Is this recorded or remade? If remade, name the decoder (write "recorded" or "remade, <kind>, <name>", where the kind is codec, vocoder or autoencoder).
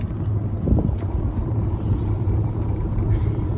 remade, vocoder, BigVGAN v2